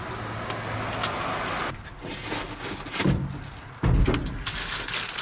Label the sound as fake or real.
real